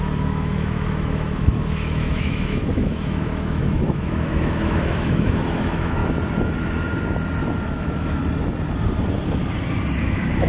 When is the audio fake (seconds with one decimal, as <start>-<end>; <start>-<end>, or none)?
0.0-6.0; 7.7-8.2; 10.0-10.5